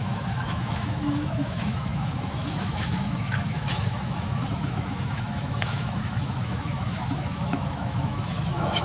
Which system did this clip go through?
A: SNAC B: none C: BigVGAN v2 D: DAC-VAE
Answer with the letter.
D